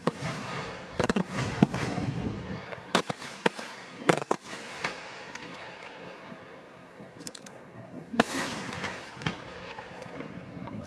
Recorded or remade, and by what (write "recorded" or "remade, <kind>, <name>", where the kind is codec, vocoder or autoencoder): remade, codec, SNAC